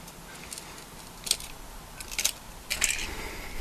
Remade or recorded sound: recorded